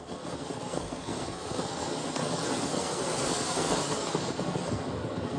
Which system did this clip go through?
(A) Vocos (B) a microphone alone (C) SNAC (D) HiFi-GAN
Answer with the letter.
C